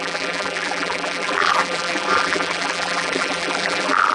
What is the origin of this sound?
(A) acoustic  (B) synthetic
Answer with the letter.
B